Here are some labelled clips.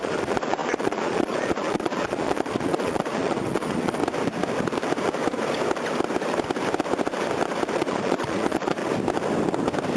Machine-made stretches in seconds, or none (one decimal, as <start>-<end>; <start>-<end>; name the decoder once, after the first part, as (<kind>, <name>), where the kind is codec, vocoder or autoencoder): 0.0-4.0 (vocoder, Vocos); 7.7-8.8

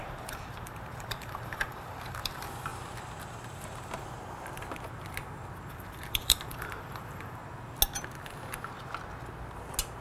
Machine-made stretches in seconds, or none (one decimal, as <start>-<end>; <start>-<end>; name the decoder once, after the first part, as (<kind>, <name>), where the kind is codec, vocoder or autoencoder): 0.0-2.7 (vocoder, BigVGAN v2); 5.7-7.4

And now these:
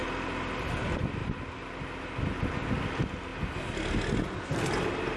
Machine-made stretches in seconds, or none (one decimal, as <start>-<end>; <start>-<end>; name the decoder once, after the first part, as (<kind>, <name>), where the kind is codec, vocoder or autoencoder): none